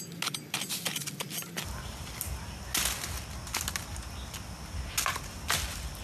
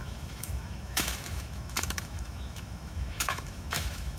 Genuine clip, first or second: first